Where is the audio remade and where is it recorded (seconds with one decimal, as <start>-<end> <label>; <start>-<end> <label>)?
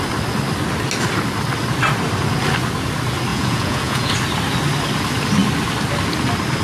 0.0-3.3 recorded; 3.3-4.1 remade; 4.1-6.6 recorded